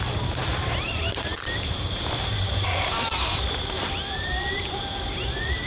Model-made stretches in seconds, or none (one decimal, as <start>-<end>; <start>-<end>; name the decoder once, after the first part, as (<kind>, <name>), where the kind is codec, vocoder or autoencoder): 0.0-5.7 (vocoder, BigVGAN v2)